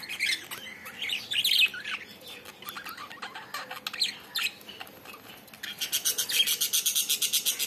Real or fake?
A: real